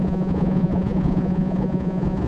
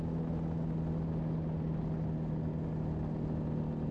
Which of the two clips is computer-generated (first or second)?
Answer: first